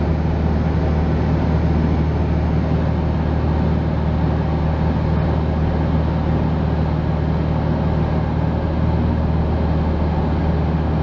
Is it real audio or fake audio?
real